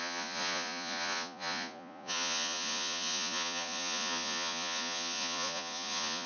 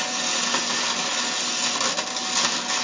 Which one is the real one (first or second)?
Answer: second